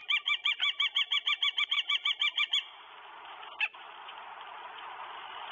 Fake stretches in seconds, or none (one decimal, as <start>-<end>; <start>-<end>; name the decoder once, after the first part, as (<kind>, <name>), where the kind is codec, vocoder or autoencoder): 0.0-2.9 (vocoder, BigVGAN v2)